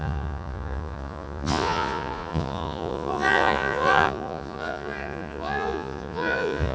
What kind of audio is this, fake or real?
fake